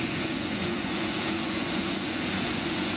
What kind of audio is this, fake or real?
fake